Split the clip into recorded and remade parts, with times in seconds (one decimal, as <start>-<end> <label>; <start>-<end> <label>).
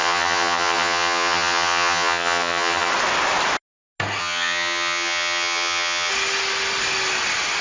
0.0-2.9 remade; 2.9-4.2 recorded; 4.2-6.1 remade; 6.1-7.6 recorded